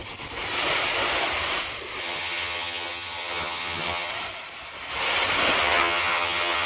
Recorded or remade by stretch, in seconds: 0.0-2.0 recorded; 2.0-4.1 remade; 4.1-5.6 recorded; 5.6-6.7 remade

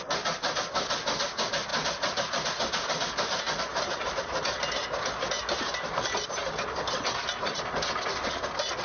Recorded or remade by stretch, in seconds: 0.0-8.8 recorded

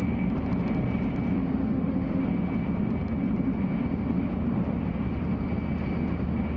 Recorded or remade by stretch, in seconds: 0.0-1.6 recorded; 1.6-2.2 remade; 2.2-6.6 recorded

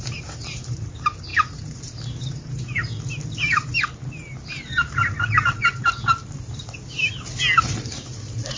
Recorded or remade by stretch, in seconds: 0.0-2.8 remade; 2.8-7.6 recorded; 7.6-8.6 remade

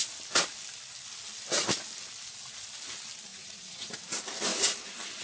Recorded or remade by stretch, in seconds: 0.0-3.3 recorded; 3.3-4.0 remade; 4.0-5.2 recorded